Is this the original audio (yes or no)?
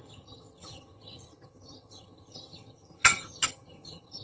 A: no